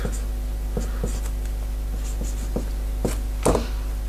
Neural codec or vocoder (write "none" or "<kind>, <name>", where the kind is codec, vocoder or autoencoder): none